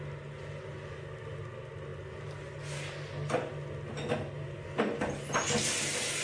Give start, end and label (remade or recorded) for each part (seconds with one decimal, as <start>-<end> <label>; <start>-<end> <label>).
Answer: 0.0-6.2 recorded